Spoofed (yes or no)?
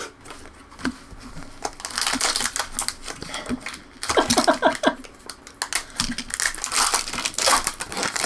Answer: no